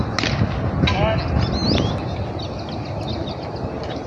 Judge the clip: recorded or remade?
recorded